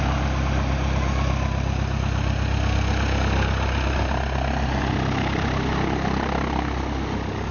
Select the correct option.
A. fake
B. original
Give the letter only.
B